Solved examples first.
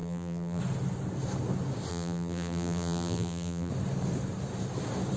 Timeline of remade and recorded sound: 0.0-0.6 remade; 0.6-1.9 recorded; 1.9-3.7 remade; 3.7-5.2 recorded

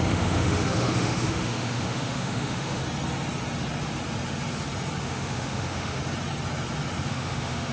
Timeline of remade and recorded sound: 0.0-2.8 remade; 2.8-5.0 recorded; 5.0-6.0 remade; 6.0-7.1 recorded; 7.1-7.7 remade

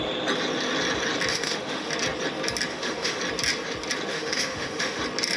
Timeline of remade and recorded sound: 0.0-1.3 recorded; 1.3-1.9 remade; 1.9-2.7 recorded; 2.7-3.2 remade; 3.2-4.1 recorded; 4.1-5.0 remade; 5.0-5.4 recorded

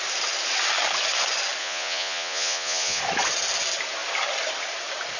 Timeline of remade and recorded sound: 0.0-1.6 recorded; 1.6-3.0 remade; 3.0-5.2 recorded

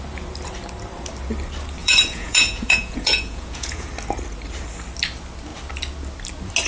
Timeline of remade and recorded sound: 0.0-1.8 recorded; 1.8-3.9 remade; 3.9-6.7 recorded